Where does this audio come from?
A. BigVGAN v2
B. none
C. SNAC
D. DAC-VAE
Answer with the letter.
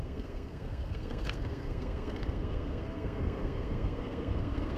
C